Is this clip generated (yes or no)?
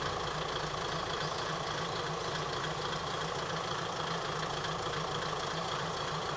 no